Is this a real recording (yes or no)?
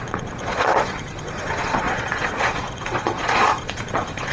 no